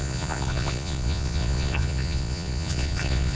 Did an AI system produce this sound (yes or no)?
yes